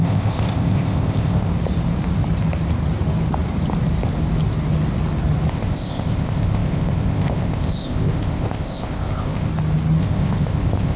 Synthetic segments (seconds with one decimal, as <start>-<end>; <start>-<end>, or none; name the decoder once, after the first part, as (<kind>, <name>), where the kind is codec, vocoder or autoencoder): 0.0-1.5 (codec, ZipCodec); 5.5-9.5; 10.0-11.0